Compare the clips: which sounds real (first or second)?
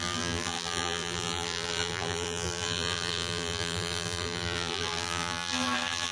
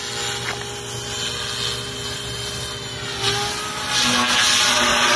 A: second